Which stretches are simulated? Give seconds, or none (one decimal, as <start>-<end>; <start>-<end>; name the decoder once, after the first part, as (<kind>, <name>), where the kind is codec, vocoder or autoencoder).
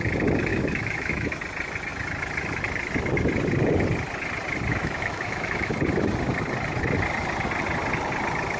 0.5-1.4 (autoencoder, DAC-VAE); 4.7-5.7